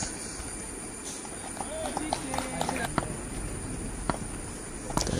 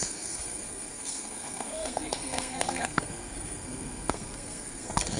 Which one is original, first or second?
first